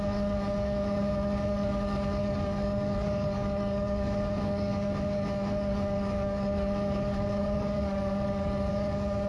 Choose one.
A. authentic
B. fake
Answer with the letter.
B